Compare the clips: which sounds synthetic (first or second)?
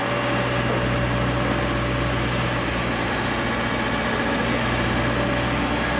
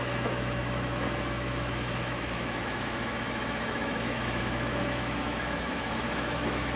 second